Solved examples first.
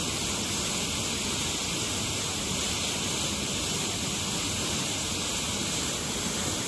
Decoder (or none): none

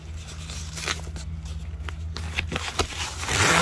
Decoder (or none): none